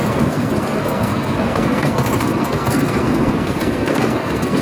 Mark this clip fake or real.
fake